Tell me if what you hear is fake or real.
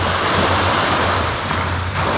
fake